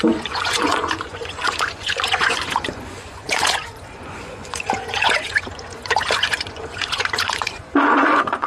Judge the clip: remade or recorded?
remade